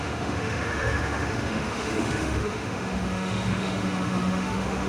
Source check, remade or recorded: remade